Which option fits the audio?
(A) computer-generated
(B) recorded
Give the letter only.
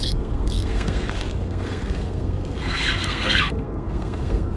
A